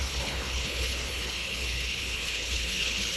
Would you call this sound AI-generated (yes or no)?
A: yes